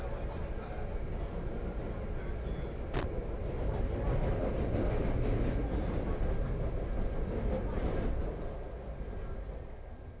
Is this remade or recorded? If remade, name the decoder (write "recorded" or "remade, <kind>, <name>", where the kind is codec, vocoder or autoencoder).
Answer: recorded